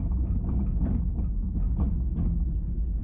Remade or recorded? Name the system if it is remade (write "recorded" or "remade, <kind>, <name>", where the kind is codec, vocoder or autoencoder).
recorded